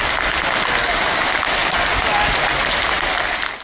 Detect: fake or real real